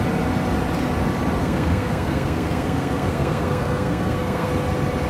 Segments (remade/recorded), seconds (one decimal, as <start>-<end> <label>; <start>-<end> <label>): 0.0-1.4 recorded; 1.4-4.5 remade; 4.5-5.1 recorded